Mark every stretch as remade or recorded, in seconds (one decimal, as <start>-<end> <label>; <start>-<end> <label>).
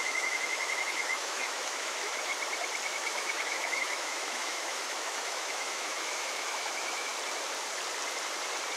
0.0-2.3 remade; 2.3-2.9 recorded; 2.9-7.1 remade; 7.1-8.8 recorded